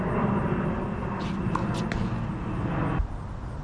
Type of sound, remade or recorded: recorded